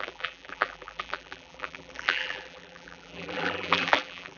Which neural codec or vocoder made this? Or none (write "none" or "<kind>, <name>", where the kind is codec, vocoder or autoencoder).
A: vocoder, BigVGAN v2